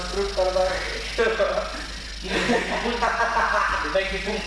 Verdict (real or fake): real